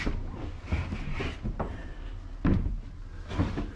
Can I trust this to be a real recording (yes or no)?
yes